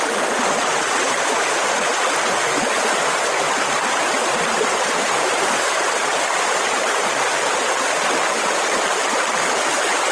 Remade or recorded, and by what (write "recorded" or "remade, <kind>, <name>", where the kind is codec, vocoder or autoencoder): recorded